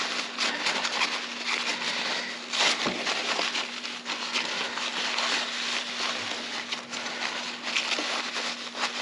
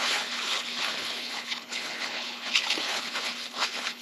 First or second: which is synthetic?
second